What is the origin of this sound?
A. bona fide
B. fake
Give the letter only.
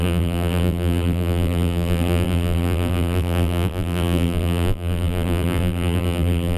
B